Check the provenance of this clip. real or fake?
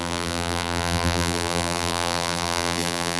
fake